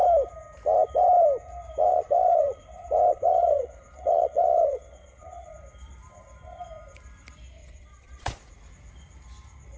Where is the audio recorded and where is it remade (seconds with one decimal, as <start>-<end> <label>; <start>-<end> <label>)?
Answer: 0.0-1.9 recorded; 1.9-2.6 remade; 2.6-3.1 recorded; 3.1-5.5 remade; 5.5-7.6 recorded; 7.6-8.7 remade; 8.7-9.8 recorded